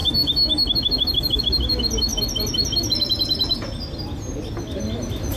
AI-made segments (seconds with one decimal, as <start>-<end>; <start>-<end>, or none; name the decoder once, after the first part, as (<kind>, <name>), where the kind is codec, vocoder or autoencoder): none